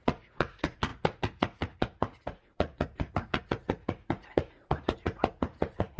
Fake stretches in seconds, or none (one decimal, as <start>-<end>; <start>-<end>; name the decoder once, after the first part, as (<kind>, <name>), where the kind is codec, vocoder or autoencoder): 0.0-6.0 (vocoder, Vocos)